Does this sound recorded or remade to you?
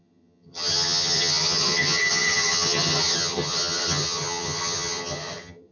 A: remade